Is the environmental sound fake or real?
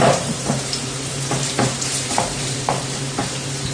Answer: fake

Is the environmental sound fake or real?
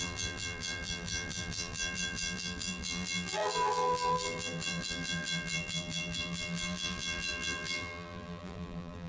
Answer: fake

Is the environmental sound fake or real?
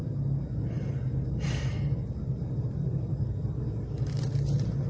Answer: real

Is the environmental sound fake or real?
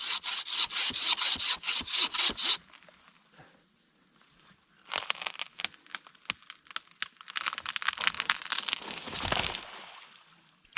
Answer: real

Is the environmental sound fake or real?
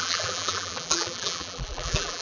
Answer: fake